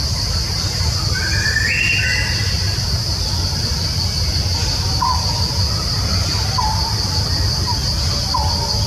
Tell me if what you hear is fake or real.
real